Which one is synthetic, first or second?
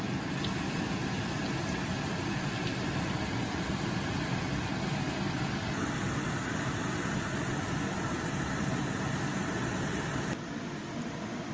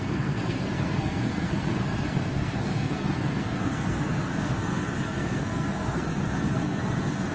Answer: second